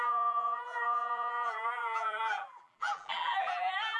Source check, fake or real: fake